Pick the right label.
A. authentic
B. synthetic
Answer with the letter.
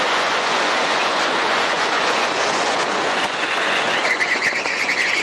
B